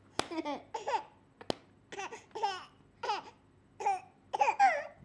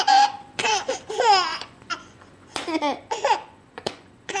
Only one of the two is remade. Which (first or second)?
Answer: second